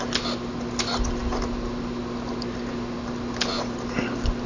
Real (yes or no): yes